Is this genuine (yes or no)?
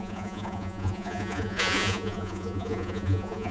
no